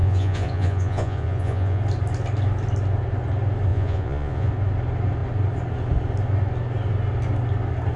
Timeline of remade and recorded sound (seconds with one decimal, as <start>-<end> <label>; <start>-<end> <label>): 0.0-1.8 remade; 1.8-3.7 recorded; 3.7-4.5 remade; 4.5-8.0 recorded